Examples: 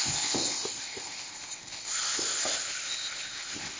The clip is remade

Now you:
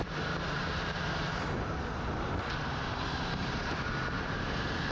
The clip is remade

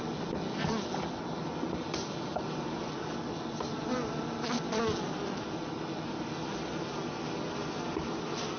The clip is recorded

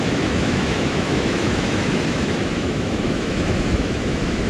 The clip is remade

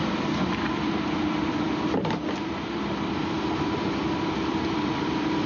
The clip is remade